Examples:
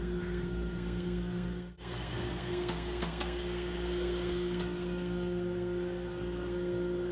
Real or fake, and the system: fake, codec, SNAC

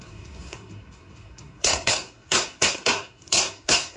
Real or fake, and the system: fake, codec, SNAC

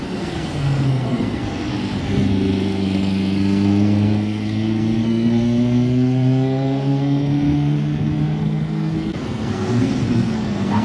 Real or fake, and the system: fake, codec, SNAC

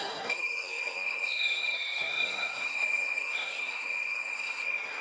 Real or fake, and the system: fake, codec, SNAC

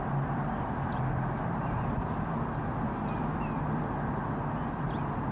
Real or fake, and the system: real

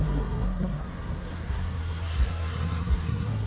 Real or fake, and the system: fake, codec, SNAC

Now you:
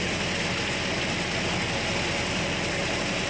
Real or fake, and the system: real